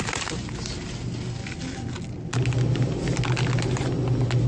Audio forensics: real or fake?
real